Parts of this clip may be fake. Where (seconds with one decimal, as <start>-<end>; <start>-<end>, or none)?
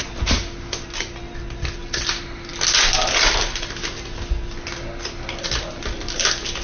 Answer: none